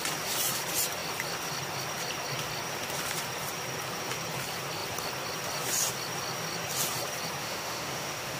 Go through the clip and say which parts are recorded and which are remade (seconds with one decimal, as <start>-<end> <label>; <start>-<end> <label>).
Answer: 0.0-7.4 recorded; 7.4-8.4 remade